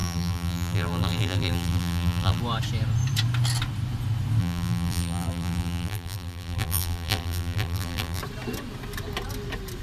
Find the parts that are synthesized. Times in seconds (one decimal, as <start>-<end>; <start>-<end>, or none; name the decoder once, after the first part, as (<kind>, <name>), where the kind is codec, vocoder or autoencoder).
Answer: 0.0-2.4 (vocoder, BigVGAN v2); 4.4-8.2